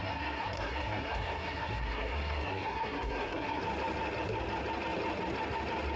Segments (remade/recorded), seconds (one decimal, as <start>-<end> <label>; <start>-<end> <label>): 0.0-3.6 remade; 3.6-6.0 recorded